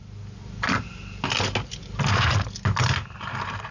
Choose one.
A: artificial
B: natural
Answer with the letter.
B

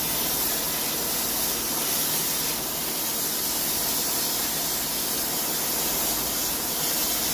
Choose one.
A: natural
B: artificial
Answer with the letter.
A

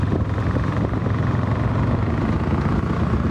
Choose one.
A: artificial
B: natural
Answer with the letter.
B